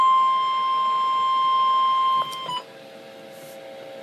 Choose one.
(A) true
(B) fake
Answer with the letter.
A